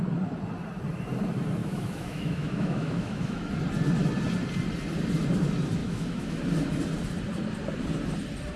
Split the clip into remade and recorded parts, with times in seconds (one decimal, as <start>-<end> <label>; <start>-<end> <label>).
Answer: 0.0-1.6 recorded; 1.6-3.5 remade; 3.5-5.8 recorded; 5.8-6.4 remade; 6.4-8.6 recorded